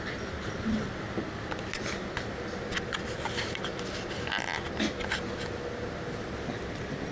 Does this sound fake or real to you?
real